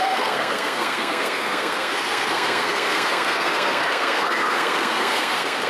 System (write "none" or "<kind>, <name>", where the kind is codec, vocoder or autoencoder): codec, SNAC